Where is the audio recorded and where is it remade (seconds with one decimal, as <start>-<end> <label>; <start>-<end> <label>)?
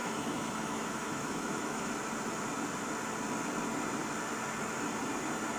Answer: 0.0-1.9 remade; 1.9-5.6 recorded